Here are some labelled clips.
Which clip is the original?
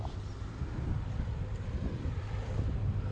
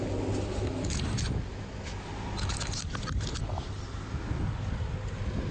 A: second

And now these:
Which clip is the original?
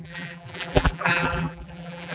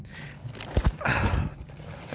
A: second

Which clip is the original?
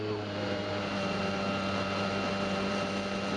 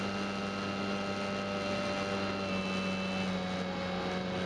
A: second